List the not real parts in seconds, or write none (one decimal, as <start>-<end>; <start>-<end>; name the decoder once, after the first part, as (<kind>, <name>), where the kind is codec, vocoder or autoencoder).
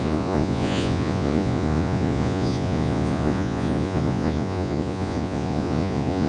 0.0-6.3 (vocoder, Vocos)